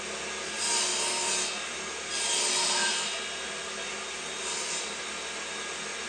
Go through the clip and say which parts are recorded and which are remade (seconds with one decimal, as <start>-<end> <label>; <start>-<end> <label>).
0.0-6.1 recorded